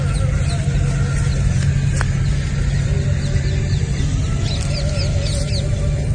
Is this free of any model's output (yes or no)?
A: yes